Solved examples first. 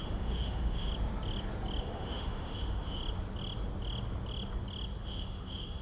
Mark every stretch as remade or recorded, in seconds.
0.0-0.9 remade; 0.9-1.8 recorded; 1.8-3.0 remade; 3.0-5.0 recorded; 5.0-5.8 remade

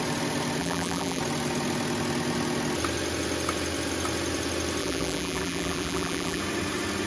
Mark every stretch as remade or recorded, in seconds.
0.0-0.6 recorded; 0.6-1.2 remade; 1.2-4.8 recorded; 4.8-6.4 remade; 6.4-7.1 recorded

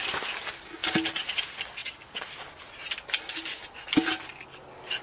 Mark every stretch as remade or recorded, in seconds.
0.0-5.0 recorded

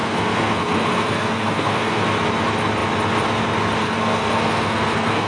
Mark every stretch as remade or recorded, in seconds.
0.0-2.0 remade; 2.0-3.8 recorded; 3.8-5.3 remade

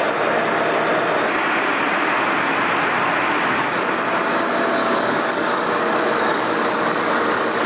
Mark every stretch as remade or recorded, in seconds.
0.0-4.8 recorded; 4.8-7.7 remade

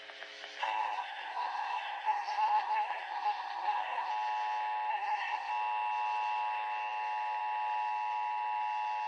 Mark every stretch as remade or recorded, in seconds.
0.0-0.6 recorded; 0.6-4.1 remade; 4.1-4.9 recorded; 4.9-5.5 remade; 5.5-9.1 recorded